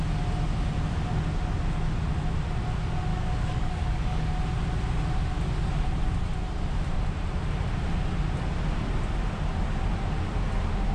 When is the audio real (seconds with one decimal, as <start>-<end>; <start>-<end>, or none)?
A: 0.0-3.1; 4.3-10.9